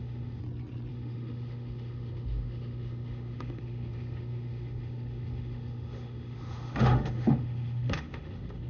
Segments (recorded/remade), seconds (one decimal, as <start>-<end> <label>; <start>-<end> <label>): 0.0-0.4 remade; 0.4-0.9 recorded; 0.9-8.7 remade